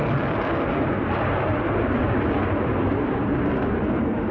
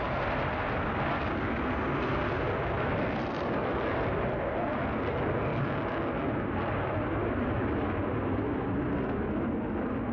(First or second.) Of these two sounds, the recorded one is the second